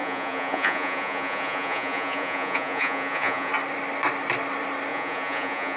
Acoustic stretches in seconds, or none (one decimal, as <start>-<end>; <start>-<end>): 3.5-4.9